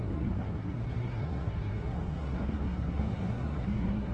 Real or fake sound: fake